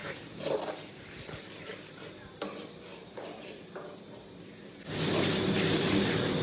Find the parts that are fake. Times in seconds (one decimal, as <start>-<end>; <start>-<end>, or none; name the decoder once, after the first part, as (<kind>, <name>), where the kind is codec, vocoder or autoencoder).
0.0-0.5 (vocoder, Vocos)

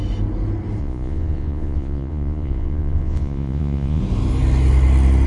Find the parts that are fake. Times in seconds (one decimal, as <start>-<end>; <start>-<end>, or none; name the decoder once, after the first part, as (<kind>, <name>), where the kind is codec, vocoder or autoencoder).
0.8-4.0 (vocoder, Vocos)

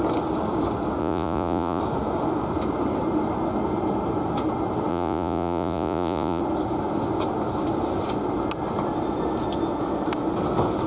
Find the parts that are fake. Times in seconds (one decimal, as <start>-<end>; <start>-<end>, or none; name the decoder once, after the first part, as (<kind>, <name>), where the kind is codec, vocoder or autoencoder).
1.0-1.8 (vocoder, Vocos); 4.9-6.4